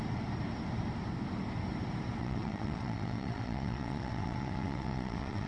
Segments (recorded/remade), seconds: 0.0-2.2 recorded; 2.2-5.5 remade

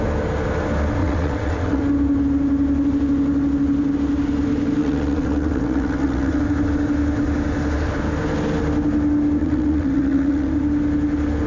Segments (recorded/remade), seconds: 0.0-1.0 recorded; 1.0-1.8 remade; 1.8-4.8 recorded; 4.8-6.4 remade; 6.4-9.4 recorded; 9.4-10.5 remade; 10.5-11.5 recorded

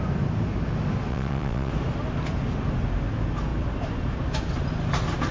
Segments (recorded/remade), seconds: 0.0-1.1 recorded; 1.1-1.7 remade; 1.7-5.3 recorded

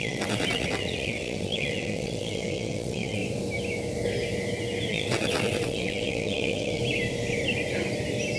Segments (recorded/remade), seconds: 0.0-3.2 remade; 3.2-4.9 recorded; 4.9-6.8 remade; 6.8-8.4 recorded

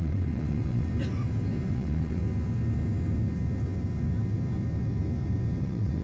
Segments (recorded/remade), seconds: 0.0-0.9 remade; 0.9-1.7 recorded; 1.7-2.2 remade; 2.2-5.6 recorded; 5.6-6.0 remade

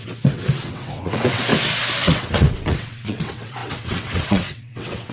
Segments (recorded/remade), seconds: 0.0-1.5 remade; 1.5-2.0 recorded; 2.0-5.1 remade